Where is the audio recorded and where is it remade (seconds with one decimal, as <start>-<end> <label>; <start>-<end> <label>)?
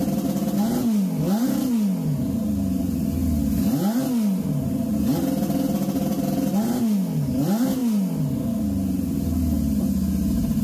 0.0-10.6 recorded